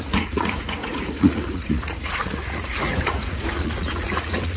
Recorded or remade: remade